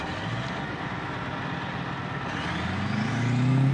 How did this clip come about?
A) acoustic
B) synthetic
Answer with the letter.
A